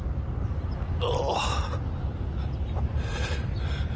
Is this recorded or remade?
recorded